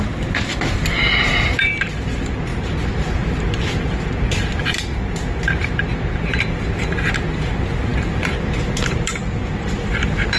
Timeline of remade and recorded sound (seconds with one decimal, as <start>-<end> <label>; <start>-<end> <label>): 0.0-0.5 remade; 0.5-1.2 recorded; 1.2-10.4 remade